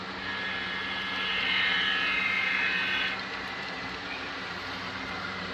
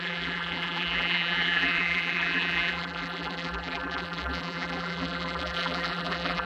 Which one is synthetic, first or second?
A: second